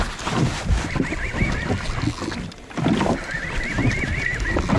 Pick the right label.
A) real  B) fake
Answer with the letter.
A